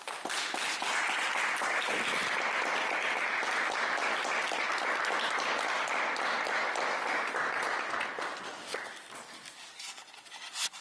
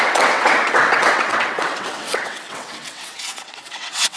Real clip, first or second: first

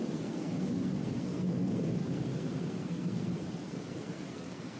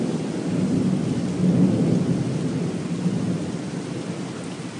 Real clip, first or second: second